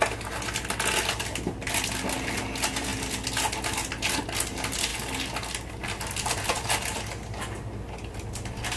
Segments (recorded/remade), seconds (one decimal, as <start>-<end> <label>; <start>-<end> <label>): 0.0-8.8 recorded